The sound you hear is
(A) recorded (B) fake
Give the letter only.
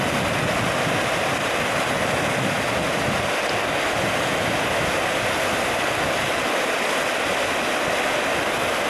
A